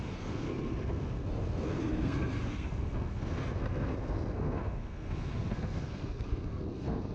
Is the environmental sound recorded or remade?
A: remade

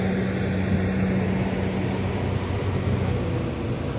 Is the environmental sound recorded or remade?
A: recorded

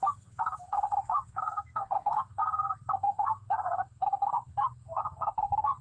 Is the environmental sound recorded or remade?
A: remade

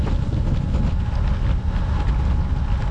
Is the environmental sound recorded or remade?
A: recorded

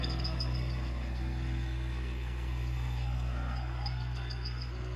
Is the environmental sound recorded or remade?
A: remade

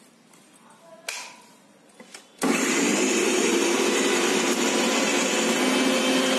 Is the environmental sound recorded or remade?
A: recorded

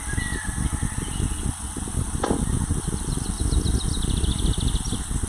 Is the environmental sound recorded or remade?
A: recorded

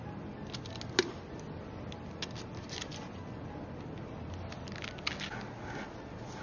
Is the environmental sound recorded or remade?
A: recorded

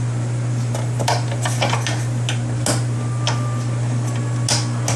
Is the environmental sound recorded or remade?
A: recorded